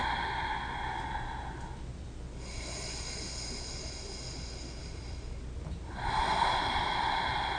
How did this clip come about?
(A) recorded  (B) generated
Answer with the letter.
A